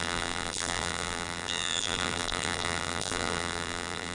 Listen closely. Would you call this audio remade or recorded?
remade